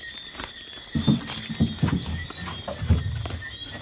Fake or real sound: real